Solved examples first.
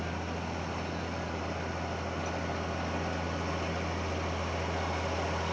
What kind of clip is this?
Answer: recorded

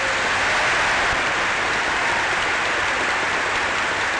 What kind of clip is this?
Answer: recorded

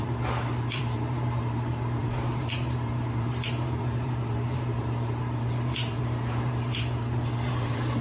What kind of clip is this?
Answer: remade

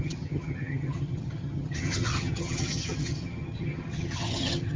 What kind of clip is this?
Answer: remade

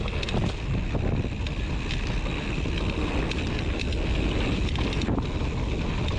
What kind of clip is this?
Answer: recorded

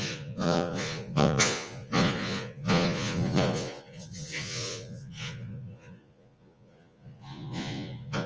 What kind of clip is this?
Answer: remade